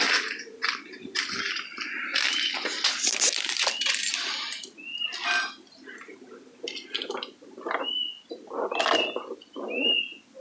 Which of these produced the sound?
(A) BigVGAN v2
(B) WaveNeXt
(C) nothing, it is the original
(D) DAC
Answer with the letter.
C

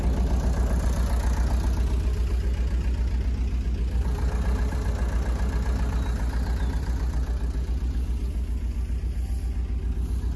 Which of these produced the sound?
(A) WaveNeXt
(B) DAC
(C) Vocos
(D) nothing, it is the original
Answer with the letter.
D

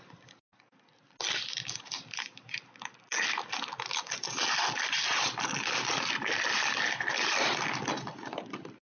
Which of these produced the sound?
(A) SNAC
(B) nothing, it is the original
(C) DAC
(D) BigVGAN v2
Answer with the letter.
B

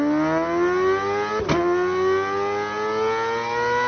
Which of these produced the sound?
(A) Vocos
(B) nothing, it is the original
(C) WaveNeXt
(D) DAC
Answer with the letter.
B